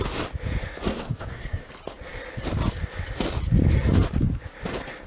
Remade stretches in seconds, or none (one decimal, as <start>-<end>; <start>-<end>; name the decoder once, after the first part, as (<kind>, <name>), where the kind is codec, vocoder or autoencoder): 0.9-1.7 (codec, SNAC)